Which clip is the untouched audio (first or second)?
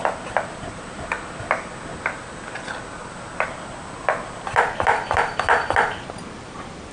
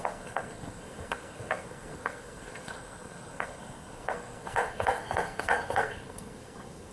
first